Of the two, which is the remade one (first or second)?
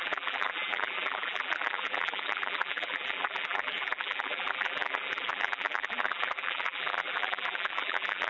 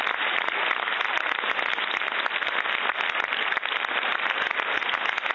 first